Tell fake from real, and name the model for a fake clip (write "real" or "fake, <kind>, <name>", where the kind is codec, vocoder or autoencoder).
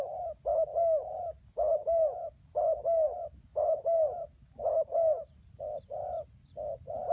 real